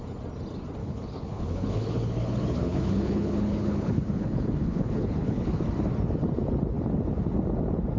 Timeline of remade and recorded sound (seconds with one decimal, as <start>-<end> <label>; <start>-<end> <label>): 0.0-0.8 recorded; 0.8-5.6 remade; 5.6-8.0 recorded